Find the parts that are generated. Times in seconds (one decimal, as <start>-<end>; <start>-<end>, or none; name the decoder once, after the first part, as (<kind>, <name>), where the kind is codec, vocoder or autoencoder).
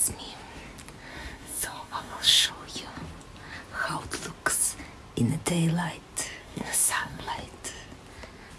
1.1-2.5 (codec, SNAC); 6.4-7.3